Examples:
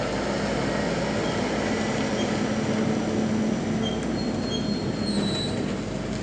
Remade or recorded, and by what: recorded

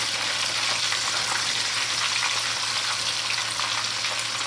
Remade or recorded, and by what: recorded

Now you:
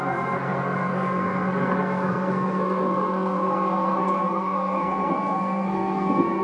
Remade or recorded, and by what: remade, codec, SNAC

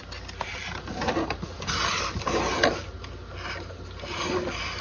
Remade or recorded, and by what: recorded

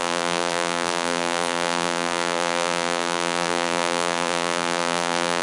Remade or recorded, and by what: remade, vocoder, BigVGAN v2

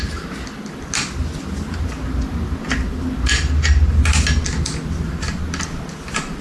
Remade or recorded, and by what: recorded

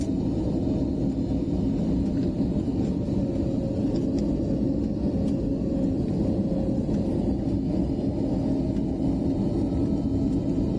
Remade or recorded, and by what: recorded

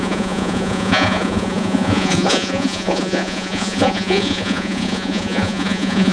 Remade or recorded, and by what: remade, vocoder, Vocos